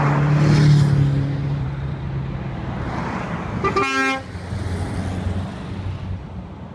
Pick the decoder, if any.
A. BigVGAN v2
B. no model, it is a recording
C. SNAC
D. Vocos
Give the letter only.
B